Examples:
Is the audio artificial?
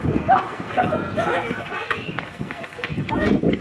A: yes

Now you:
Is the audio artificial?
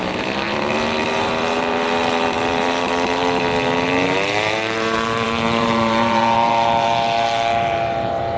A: yes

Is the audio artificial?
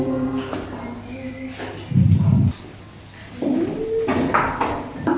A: no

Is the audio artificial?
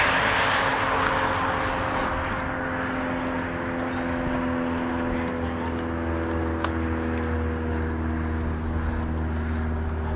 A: no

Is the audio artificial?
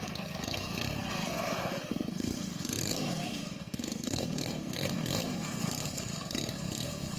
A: yes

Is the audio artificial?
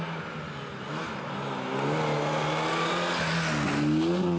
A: no